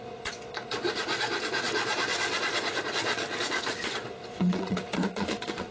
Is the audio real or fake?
fake